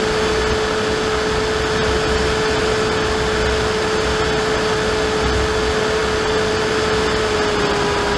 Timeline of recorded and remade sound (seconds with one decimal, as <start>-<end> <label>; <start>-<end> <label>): 0.0-8.2 recorded